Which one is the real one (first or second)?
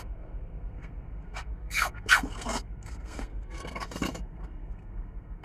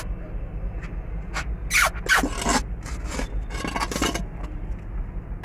second